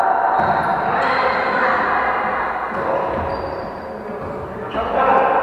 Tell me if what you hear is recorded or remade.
recorded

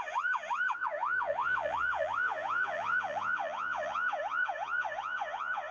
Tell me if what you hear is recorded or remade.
remade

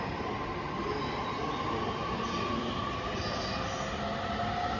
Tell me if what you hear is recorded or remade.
recorded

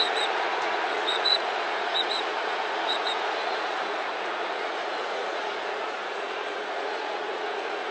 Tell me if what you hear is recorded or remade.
remade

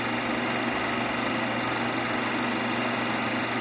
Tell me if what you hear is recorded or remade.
recorded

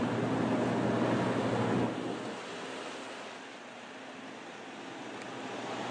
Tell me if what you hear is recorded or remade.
recorded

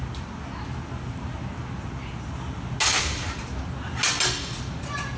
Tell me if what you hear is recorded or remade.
recorded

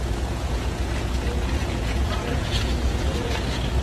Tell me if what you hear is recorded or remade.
remade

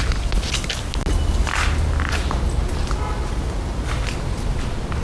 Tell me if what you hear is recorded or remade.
recorded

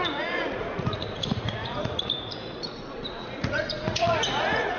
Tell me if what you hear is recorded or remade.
remade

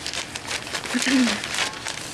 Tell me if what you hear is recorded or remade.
recorded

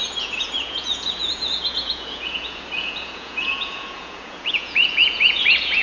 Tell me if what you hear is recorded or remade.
remade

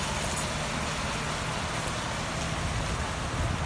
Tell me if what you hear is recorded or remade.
recorded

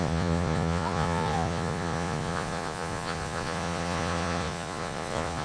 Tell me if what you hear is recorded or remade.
remade